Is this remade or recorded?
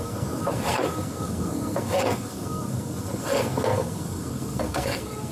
remade